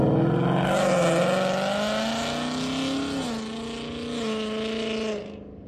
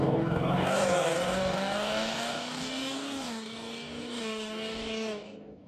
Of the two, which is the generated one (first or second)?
second